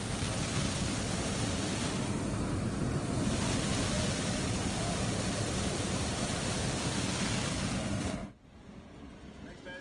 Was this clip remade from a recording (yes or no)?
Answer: no